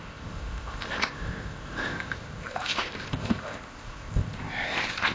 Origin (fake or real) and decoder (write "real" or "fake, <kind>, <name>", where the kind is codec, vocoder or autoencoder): fake, codec, ZipCodec